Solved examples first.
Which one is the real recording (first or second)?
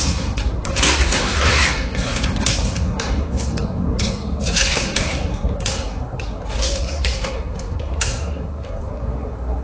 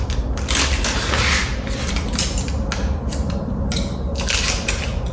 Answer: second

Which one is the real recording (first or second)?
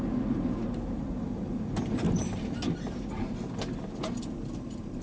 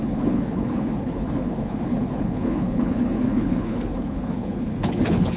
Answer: first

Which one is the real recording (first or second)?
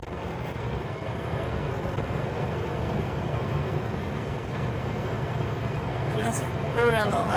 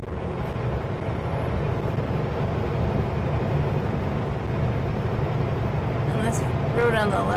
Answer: second